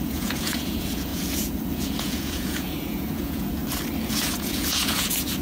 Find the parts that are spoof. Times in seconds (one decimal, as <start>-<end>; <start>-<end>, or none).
0.0-3.6; 4.1-5.4